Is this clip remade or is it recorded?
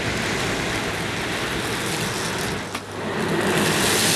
recorded